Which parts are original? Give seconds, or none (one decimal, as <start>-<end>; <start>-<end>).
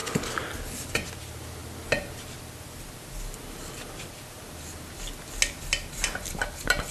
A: 0.0-6.9